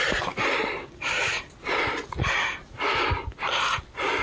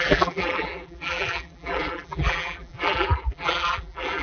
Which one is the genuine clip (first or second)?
first